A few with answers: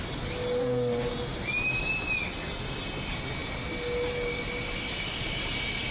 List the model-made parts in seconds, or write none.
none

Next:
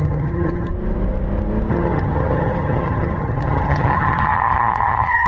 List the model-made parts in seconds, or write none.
0.0-0.7 (vocoder, HiFi-GAN); 1.7-5.3

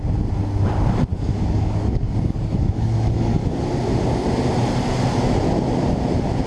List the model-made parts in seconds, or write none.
1.1-3.6 (codec, DAC)

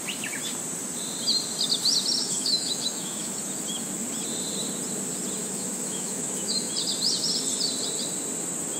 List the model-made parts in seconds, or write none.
2.2-3.3 (autoencoder, DAC-VAE); 5.4-6.7